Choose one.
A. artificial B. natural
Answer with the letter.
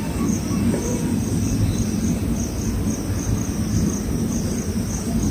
B